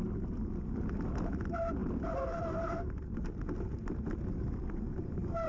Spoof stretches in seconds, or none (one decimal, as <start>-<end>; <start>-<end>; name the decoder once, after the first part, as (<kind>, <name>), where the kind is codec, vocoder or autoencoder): none